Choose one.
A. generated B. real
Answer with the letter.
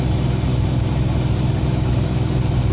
B